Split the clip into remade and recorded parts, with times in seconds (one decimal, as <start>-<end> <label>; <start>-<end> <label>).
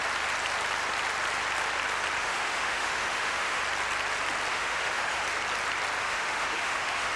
0.0-2.2 recorded; 2.2-3.6 remade; 3.6-4.5 recorded; 4.5-5.2 remade; 5.2-6.0 recorded; 6.0-7.2 remade